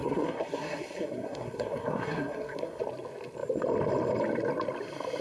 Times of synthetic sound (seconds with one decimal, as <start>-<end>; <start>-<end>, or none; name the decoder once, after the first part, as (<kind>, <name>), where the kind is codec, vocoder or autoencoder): 0.0-2.8 (codec, SNAC)